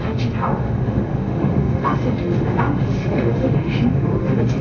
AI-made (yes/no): yes